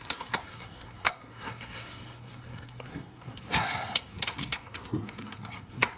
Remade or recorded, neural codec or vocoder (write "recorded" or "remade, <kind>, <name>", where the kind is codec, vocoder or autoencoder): remade, codec, SNAC